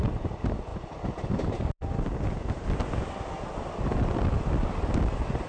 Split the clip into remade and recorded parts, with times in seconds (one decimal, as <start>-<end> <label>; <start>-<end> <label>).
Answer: 0.0-5.5 recorded